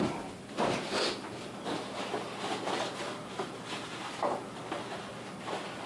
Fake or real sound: real